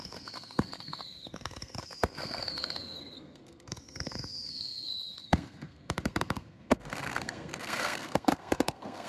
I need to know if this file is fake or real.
fake